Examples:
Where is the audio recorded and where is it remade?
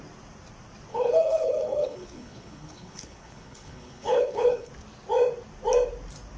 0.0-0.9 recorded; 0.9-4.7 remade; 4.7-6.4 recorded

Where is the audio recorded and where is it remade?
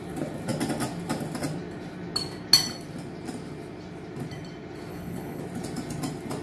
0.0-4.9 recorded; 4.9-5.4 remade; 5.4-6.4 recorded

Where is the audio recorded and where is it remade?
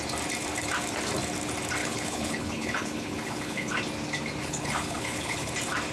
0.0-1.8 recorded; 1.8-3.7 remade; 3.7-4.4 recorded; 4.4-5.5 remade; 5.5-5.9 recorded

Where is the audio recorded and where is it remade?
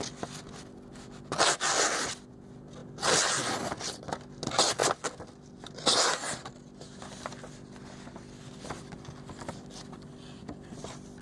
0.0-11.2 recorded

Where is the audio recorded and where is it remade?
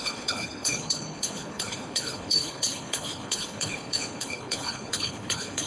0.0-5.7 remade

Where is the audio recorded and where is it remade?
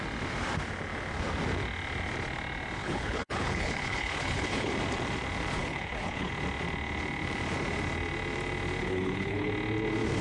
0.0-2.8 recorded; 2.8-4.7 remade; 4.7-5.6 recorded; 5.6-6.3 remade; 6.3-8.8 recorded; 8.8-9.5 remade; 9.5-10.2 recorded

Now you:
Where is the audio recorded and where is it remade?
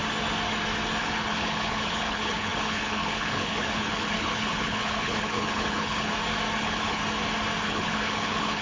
0.0-1.0 recorded; 1.0-6.1 remade; 6.1-6.6 recorded; 6.6-7.0 remade; 7.0-7.6 recorded; 7.6-8.6 remade